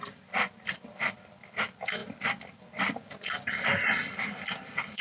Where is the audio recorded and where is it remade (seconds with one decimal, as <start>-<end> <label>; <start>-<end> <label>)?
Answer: 0.0-5.0 recorded